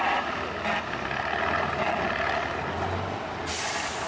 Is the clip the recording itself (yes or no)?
yes